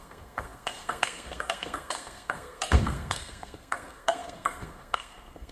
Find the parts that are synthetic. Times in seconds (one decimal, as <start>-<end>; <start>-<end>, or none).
0.0-5.5